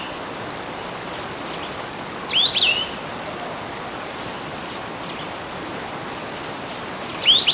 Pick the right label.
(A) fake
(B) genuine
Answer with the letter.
B